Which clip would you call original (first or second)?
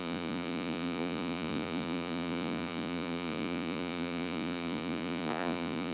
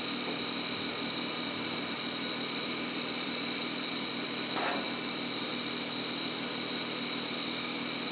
second